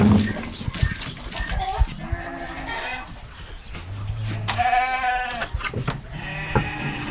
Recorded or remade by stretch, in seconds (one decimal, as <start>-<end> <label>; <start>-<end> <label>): 0.0-7.1 recorded